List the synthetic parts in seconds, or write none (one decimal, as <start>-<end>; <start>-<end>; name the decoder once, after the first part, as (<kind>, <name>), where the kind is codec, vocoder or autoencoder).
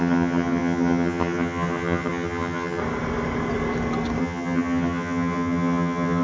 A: 0.0-2.8 (vocoder, HiFi-GAN); 4.2-6.2